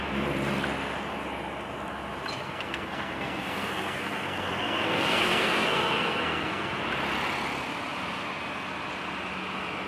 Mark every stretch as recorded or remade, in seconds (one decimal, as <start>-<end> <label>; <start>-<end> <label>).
0.0-2.4 recorded; 2.4-6.8 remade; 6.8-9.9 recorded